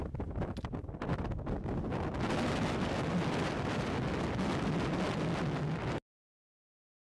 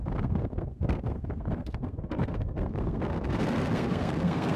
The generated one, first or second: second